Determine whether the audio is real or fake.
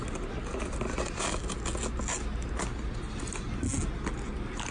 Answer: real